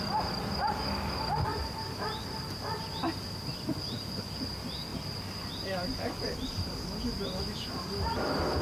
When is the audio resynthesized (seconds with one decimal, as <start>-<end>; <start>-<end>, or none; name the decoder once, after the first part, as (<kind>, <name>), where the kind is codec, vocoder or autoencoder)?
1.5-2.0 (vocoder, BigVGAN v2); 4.9-5.5